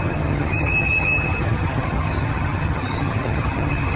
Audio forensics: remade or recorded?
remade